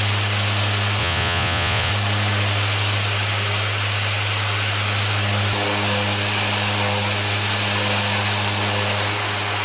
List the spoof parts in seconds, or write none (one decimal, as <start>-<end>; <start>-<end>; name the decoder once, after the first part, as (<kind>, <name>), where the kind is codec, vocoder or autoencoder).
1.0-1.9 (vocoder, Vocos)